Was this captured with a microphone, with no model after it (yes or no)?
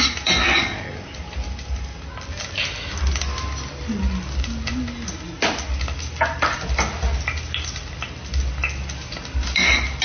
yes